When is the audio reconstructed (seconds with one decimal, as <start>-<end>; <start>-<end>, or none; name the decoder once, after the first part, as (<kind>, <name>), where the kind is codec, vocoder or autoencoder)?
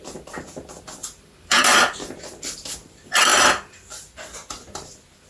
1.0-2.3 (vocoder, BigVGAN v2)